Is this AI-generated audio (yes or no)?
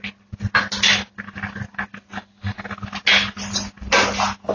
no